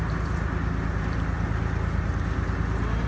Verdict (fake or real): real